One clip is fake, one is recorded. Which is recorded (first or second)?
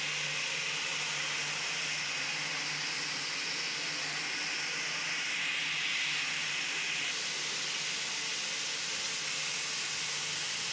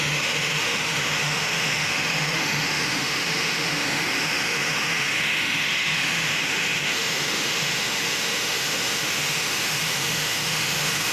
first